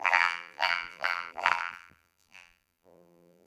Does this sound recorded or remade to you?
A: remade